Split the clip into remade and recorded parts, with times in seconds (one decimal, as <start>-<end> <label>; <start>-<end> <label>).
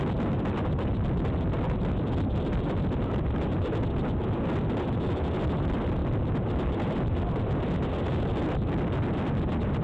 0.0-9.8 recorded